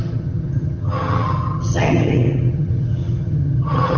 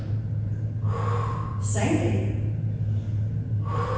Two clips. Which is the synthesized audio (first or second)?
first